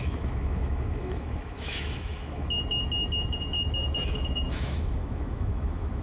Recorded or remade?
remade